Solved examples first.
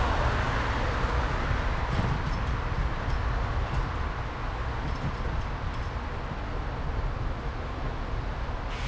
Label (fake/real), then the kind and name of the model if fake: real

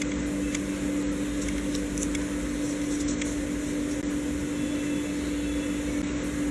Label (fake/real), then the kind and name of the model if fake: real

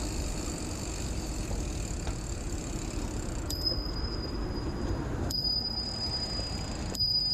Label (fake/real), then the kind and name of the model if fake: fake, vocoder, BigVGAN v2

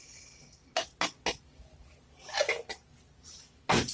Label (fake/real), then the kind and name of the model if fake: real